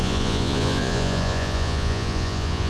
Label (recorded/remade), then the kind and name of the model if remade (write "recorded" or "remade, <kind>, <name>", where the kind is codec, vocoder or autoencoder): remade, vocoder, Vocos